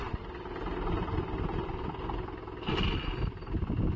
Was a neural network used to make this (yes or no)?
no